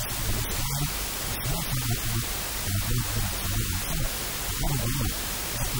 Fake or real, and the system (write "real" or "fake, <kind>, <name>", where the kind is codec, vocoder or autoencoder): real